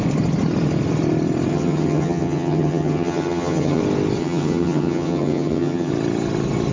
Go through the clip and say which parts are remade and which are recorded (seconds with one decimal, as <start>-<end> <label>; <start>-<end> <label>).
0.0-1.5 recorded; 1.5-3.8 remade; 3.8-4.2 recorded; 4.2-5.9 remade; 5.9-6.7 recorded